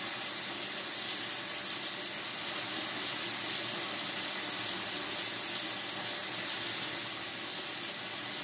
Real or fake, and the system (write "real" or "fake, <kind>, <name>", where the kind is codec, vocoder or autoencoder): real